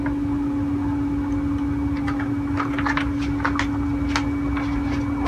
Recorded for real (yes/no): yes